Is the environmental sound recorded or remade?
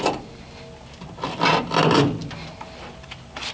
recorded